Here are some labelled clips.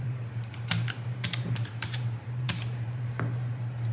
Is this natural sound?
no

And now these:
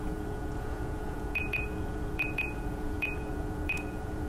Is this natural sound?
no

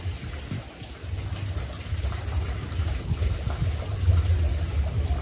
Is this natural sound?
yes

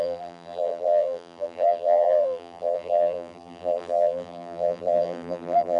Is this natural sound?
no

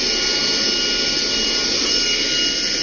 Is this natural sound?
yes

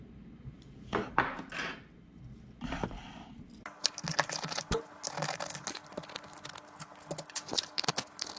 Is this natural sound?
yes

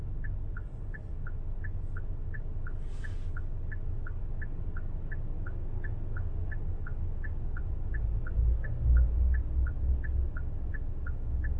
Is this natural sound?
yes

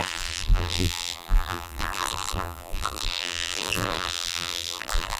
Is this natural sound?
no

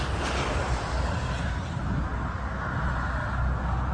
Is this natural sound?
yes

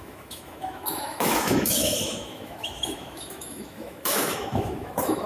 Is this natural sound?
no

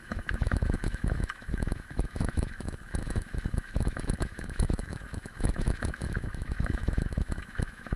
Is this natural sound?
no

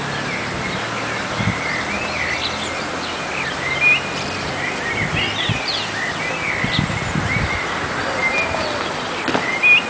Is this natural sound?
yes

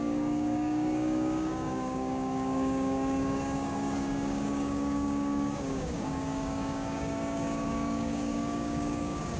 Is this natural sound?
no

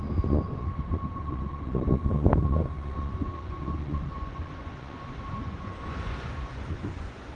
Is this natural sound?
no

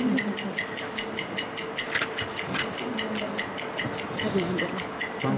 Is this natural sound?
yes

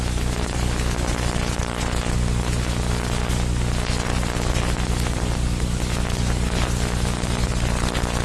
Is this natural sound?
yes